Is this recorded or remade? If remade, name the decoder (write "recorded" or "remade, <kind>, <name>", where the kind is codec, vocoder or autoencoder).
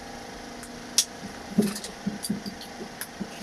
recorded